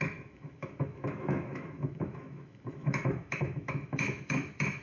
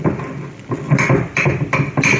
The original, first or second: second